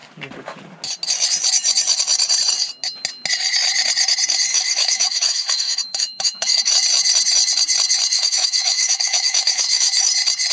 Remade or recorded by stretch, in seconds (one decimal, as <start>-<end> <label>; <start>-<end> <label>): 0.0-4.5 recorded; 4.5-6.7 remade; 6.7-8.1 recorded; 8.1-10.1 remade; 10.1-10.5 recorded